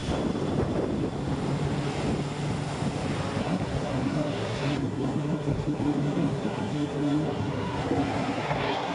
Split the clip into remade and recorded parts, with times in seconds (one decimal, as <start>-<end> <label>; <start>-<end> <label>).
0.0-3.4 recorded; 3.4-8.9 remade